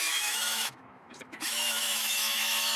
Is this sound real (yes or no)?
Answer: no